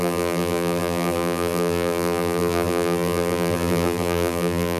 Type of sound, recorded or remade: remade